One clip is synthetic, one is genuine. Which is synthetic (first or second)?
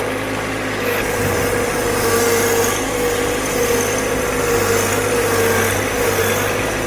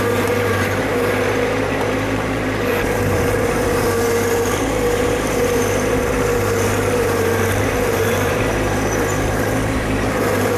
second